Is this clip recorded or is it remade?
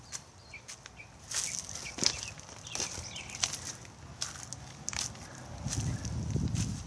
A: recorded